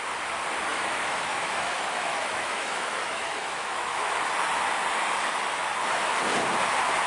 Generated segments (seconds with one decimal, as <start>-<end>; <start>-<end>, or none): 0.7-4.2